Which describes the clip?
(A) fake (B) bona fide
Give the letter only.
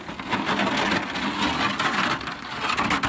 B